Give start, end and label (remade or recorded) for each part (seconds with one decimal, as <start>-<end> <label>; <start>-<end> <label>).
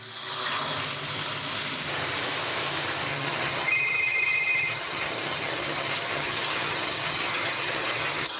0.0-3.1 recorded; 3.1-8.4 remade